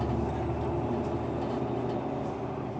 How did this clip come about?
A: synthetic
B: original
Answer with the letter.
B